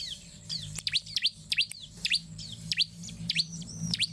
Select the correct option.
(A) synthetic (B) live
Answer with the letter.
A